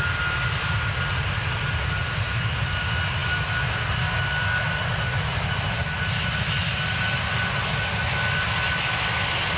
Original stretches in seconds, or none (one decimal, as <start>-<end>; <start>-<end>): 0.0-9.6